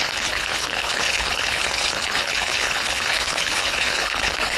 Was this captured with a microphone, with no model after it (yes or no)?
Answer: no